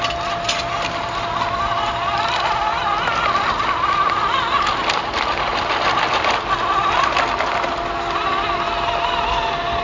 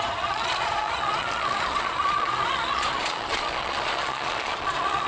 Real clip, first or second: first